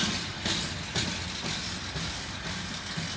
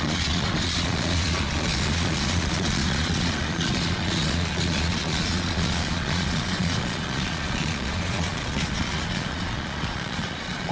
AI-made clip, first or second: second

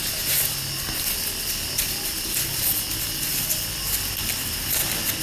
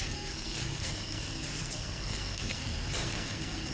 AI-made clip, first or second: second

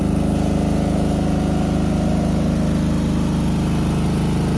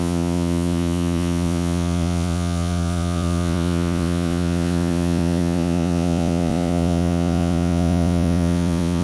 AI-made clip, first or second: second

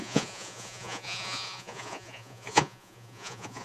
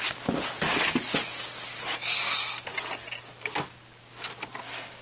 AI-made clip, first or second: first